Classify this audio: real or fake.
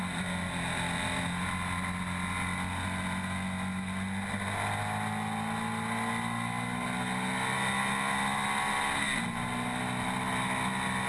real